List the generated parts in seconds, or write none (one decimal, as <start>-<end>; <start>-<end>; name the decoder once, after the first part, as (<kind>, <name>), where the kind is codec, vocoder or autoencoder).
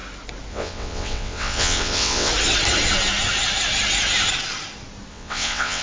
0.5-2.3 (vocoder, WaveNeXt); 5.1-5.8